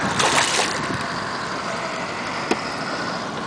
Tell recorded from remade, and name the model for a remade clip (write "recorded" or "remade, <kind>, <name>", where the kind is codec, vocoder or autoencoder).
recorded